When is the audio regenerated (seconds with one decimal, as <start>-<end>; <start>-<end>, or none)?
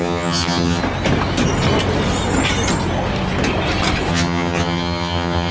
0.0-0.8; 4.1-5.5